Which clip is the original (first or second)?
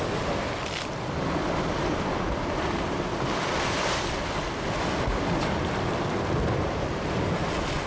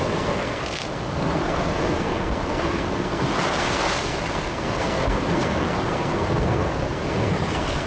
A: first